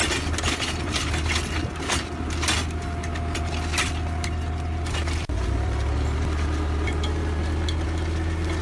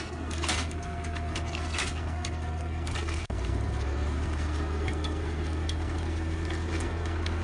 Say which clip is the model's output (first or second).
second